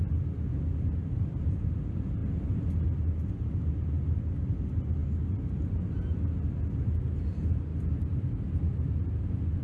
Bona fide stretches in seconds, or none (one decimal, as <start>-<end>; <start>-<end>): 0.0-9.6